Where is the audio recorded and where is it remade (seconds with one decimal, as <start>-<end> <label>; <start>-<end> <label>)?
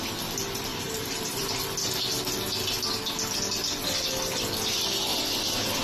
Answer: 0.0-0.7 recorded; 0.7-1.5 remade; 1.5-5.8 recorded